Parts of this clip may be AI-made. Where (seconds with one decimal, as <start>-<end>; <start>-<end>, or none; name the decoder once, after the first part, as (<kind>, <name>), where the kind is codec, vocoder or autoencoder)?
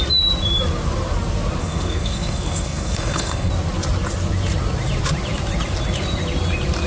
1.6-3.5 (codec, SNAC)